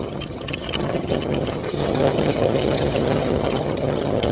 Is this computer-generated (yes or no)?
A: yes